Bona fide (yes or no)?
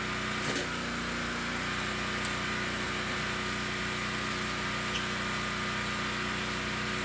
yes